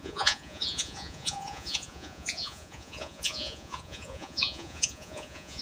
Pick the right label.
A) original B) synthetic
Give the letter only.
B